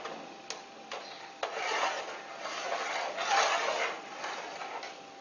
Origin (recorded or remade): recorded